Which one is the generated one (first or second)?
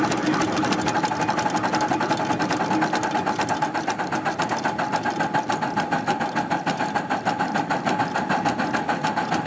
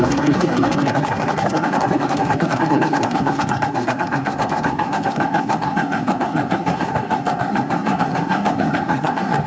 second